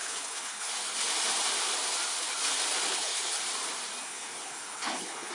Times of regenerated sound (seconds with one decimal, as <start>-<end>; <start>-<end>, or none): 0.0-0.7; 2.9-3.4; 4.0-5.3